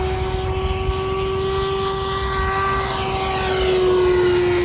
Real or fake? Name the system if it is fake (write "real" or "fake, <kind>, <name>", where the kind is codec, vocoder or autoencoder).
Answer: real